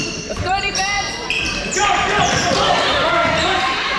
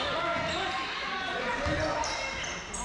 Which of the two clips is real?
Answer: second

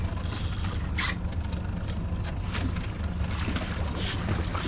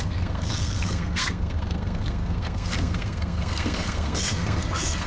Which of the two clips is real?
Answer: first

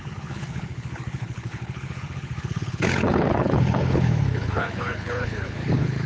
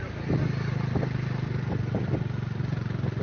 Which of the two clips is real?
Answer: second